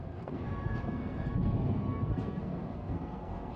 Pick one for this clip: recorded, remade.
remade